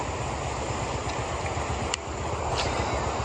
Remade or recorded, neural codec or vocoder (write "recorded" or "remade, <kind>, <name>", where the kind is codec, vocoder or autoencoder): recorded